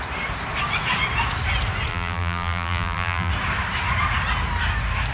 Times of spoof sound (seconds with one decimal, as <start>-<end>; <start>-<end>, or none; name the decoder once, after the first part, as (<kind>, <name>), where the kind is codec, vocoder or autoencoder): 1.9-3.3 (vocoder, BigVGAN v2)